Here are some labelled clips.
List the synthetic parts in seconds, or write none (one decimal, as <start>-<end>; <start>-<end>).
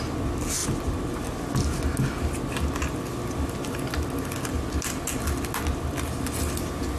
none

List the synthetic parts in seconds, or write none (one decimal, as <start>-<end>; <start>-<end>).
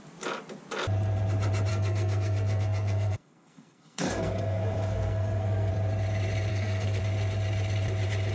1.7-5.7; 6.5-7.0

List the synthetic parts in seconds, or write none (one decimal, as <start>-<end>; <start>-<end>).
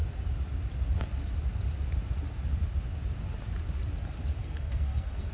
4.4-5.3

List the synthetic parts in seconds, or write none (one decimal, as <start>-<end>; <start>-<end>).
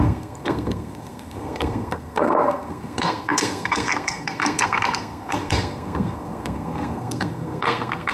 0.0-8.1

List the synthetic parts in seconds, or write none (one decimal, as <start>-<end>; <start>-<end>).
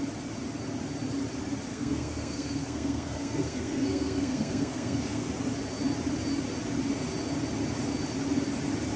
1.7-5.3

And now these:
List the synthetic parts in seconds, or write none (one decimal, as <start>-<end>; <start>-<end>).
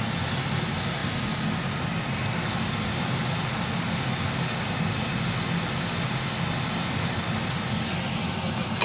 none